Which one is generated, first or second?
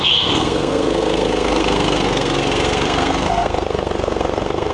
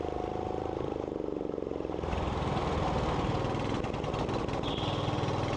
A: first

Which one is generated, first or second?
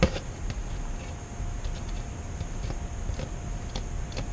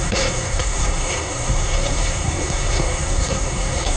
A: second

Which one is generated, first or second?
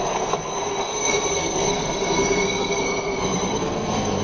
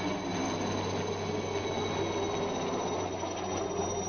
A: first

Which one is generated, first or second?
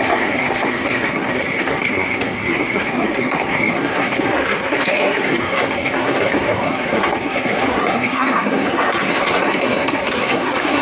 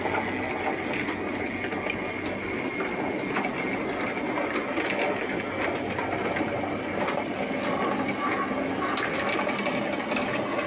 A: first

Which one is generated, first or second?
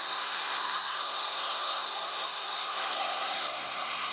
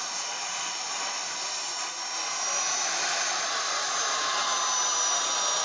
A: first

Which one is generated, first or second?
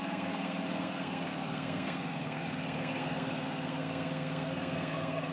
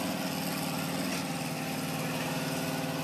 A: first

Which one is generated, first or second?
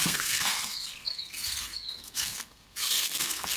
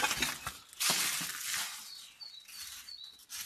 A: first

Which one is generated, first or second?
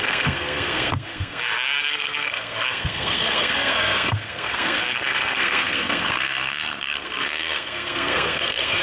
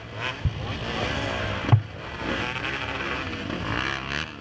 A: first